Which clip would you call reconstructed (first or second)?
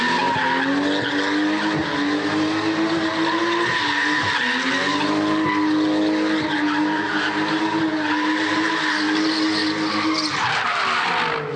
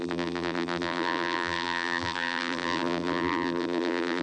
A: second